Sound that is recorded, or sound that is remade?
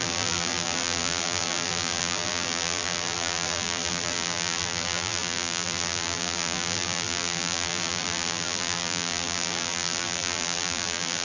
remade